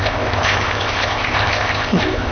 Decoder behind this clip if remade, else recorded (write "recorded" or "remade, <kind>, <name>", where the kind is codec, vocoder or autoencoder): remade, codec, ZipCodec